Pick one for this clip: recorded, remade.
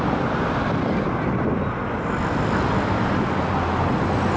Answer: recorded